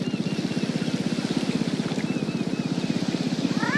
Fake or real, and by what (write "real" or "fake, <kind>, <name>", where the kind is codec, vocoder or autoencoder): real